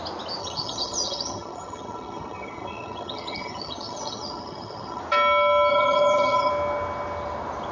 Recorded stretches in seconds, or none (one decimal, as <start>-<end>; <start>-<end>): 0.0-0.4; 5.0-5.7; 6.5-7.7